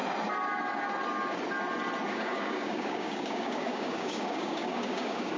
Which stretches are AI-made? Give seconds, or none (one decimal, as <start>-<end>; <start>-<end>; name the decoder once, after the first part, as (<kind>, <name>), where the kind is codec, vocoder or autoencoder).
2.1-5.4 (codec, DAC)